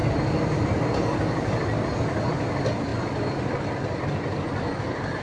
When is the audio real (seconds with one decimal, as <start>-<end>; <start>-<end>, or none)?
0.0-5.2